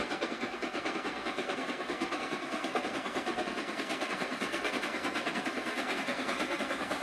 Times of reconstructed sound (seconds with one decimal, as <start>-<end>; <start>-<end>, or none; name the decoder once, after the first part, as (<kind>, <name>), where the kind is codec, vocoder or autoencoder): 0.0-7.0 (codec, SNAC)